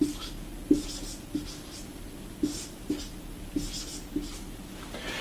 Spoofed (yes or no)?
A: no